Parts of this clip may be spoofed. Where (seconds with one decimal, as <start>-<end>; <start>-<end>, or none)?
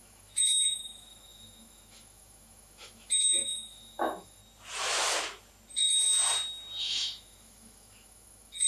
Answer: 0.0-4.4; 6.8-8.7